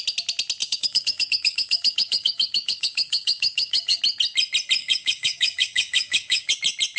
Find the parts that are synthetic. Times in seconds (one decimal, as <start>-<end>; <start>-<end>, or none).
0.6-4.0; 4.8-6.5